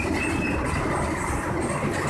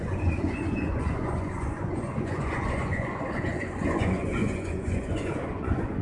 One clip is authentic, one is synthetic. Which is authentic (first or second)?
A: first